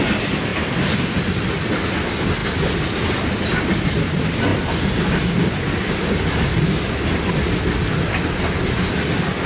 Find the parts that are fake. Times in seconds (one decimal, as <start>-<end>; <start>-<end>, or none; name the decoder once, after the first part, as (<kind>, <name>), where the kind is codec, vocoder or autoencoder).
none